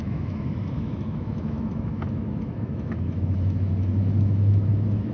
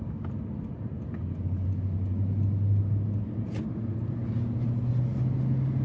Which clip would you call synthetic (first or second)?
first